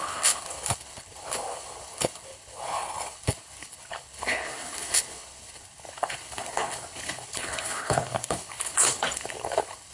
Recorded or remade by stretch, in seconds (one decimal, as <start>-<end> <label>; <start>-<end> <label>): 0.0-9.9 remade